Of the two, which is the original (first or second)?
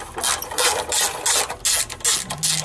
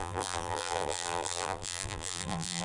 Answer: first